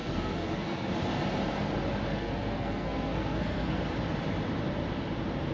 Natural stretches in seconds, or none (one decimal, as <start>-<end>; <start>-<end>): 0.9-2.1; 3.8-5.5